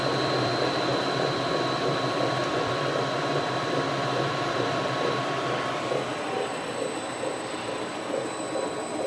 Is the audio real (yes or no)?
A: no